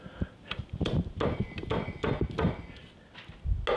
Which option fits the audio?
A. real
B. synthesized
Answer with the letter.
A